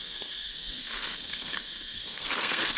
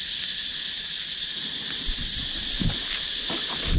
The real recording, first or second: second